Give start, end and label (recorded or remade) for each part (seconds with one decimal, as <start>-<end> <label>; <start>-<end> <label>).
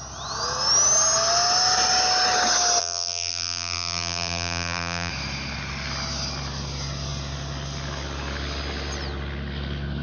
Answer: 0.0-2.8 recorded; 2.8-5.1 remade; 5.1-10.0 recorded